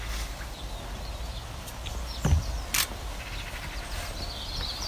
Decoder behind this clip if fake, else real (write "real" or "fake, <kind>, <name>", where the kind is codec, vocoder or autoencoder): real